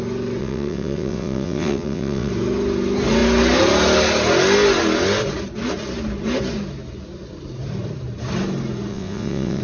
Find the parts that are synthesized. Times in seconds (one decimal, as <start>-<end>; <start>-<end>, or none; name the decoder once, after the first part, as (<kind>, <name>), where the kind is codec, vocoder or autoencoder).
0.4-2.3 (vocoder, WaveNeXt); 8.9-9.6